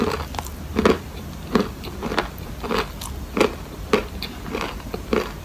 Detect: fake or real real